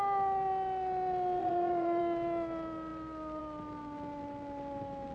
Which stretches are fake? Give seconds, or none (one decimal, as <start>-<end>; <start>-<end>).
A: 1.4-2.0